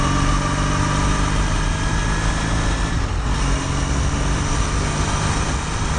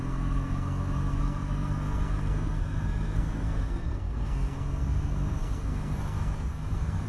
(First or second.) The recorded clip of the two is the first